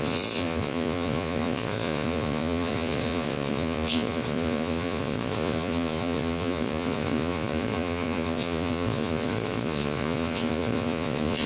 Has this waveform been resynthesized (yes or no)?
yes